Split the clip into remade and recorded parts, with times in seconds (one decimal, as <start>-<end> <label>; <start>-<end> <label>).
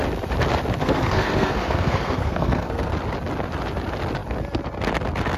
0.0-0.8 recorded; 0.8-2.9 remade; 2.9-5.4 recorded